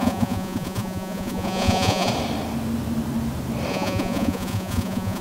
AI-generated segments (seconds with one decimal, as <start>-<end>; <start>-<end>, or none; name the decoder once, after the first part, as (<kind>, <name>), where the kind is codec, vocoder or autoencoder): 0.0-2.1 (vocoder, Vocos); 3.7-5.2